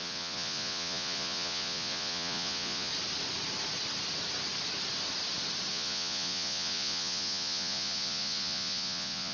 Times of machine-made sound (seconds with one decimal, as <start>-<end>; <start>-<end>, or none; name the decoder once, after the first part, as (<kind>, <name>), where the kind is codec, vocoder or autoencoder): 0.0-2.9 (vocoder, Vocos); 5.7-9.3